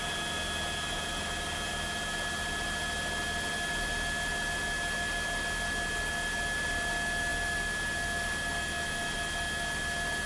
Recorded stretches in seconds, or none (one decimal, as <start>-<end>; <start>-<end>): 0.0-10.3